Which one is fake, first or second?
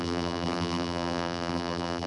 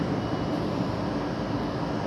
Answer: first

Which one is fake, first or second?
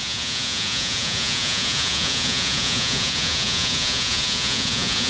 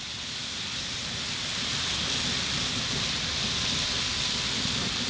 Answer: first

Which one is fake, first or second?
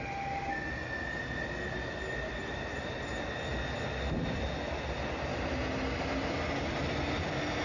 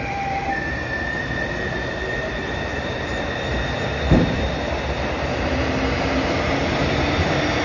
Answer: second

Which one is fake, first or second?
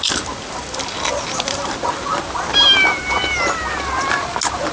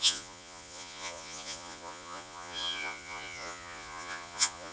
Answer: second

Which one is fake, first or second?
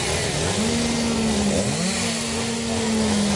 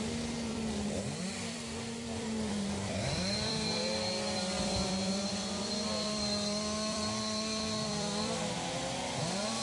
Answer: second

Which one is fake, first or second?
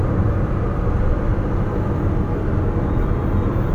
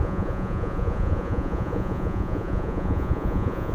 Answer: second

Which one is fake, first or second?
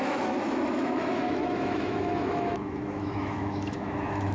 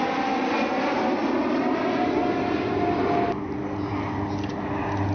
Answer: first